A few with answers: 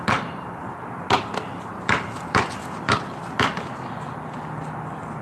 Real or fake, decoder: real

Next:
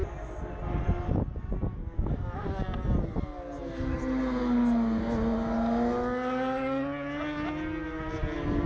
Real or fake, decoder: real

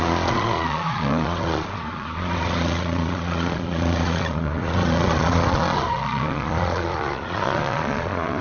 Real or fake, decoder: fake, vocoder, Vocos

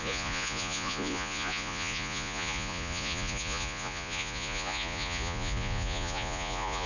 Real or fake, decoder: fake, vocoder, Vocos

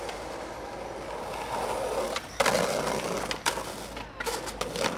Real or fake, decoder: real